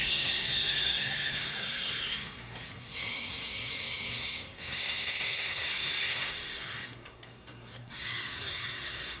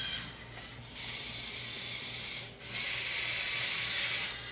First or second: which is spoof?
first